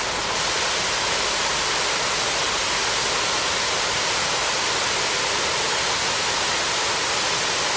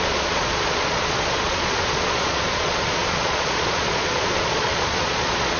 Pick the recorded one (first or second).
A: first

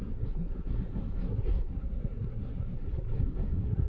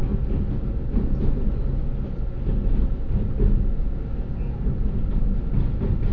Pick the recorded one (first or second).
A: second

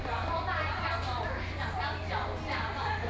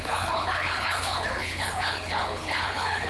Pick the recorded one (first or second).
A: first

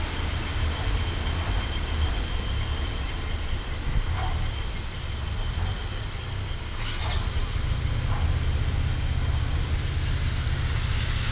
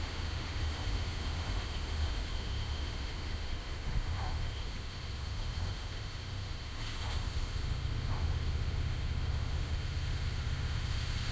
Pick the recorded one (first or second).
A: first